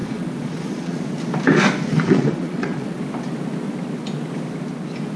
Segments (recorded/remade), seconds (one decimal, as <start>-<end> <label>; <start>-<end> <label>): 0.0-1.0 remade; 1.0-1.9 recorded; 1.9-3.0 remade; 3.0-5.2 recorded